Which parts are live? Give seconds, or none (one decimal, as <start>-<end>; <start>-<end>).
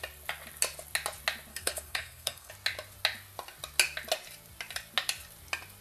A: 0.0-1.5; 2.5-5.8